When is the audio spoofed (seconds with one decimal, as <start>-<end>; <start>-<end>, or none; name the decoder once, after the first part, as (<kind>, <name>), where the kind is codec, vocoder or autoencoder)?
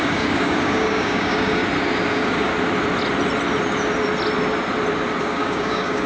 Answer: 0.0-1.6 (codec, DAC); 2.1-2.5; 5.2-6.1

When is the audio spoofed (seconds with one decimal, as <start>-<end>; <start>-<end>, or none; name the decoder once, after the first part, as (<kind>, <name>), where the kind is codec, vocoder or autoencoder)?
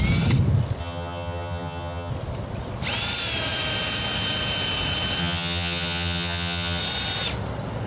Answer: 0.8-2.1 (vocoder, HiFi-GAN); 5.2-6.8